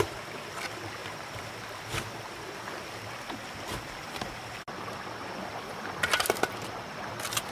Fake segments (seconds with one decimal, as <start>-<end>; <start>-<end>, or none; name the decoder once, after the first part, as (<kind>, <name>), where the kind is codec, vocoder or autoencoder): none